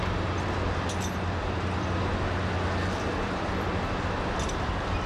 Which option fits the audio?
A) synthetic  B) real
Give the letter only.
B